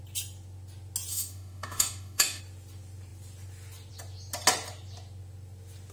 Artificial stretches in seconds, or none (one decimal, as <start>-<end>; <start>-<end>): 1.1-2.4

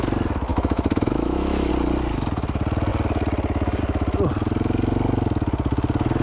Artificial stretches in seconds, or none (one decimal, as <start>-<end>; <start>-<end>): 0.5-1.7